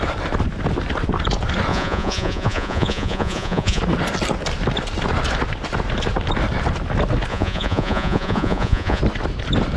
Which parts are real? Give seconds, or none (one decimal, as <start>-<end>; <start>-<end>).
0.0-1.7; 3.8-7.3; 9.0-9.8